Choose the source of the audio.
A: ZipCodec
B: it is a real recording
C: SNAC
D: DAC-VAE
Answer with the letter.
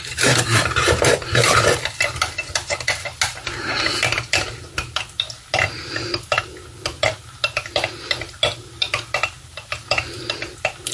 B